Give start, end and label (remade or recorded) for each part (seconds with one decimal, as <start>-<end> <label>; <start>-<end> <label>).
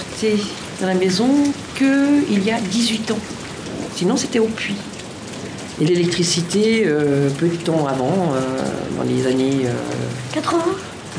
0.0-5.8 recorded; 5.8-6.5 remade; 6.5-11.2 recorded